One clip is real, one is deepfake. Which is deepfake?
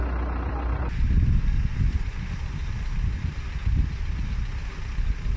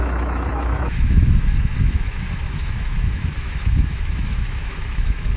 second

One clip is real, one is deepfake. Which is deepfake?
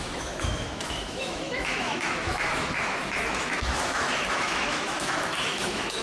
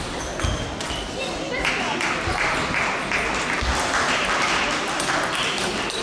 first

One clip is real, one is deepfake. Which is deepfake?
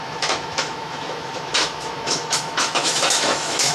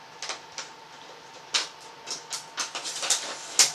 first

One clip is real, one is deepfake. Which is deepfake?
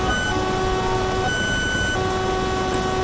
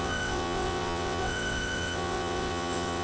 second